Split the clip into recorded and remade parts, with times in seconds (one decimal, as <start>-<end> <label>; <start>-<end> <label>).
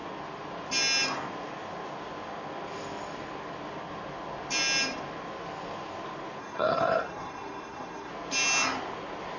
0.0-6.4 recorded; 6.4-8.1 remade; 8.1-9.4 recorded